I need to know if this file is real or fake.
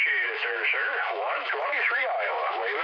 fake